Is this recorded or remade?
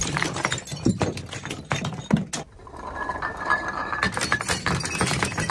recorded